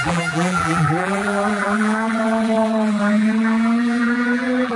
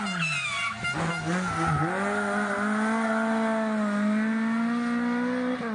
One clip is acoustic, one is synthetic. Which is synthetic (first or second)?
first